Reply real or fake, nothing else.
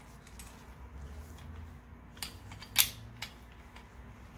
real